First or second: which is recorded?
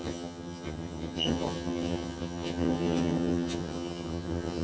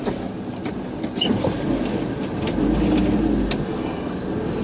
second